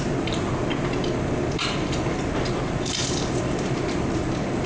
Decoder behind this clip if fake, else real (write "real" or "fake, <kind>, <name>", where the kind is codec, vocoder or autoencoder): fake, vocoder, BigVGAN v2